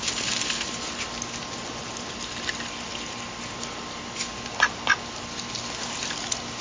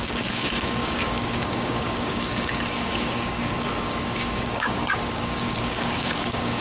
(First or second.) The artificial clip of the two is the second